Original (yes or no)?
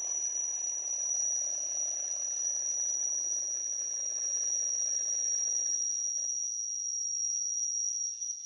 no